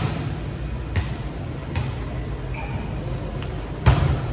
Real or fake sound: real